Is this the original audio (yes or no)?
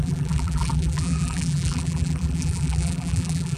no